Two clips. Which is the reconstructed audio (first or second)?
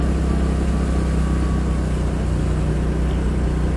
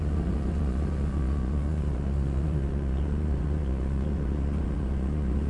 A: second